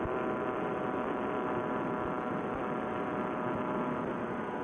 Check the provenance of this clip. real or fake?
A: real